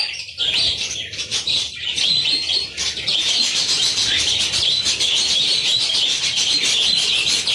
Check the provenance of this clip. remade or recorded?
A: recorded